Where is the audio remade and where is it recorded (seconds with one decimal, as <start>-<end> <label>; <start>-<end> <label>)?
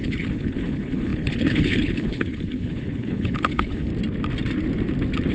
0.0-3.9 remade; 3.9-5.3 recorded